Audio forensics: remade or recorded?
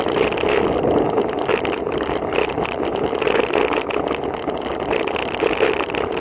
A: recorded